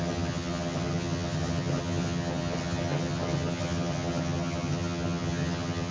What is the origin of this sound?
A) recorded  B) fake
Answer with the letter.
B